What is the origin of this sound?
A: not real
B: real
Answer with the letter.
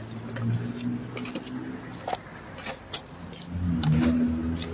B